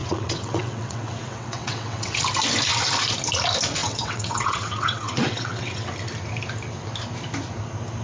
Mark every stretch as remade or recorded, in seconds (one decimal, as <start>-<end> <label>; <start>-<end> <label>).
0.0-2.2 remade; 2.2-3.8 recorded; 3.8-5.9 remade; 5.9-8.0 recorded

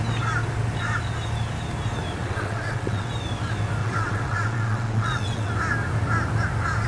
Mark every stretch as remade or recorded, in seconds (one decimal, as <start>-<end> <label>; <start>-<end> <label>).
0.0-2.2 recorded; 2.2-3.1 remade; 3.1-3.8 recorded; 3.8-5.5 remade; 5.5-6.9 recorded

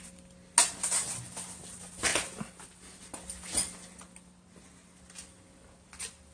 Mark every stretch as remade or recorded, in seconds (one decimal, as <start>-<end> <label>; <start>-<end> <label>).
0.0-6.3 recorded